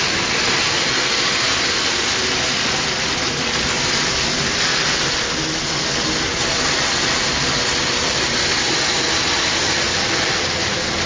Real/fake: real